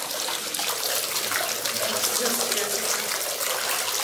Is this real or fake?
real